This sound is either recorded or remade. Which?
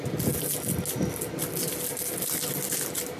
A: recorded